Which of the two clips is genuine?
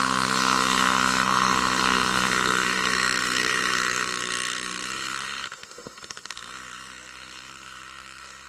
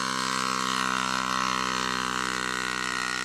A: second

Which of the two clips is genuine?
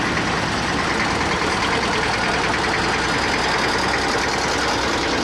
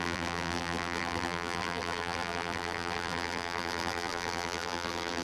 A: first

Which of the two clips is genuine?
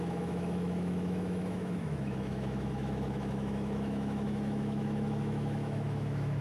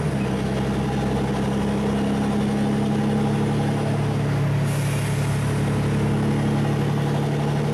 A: second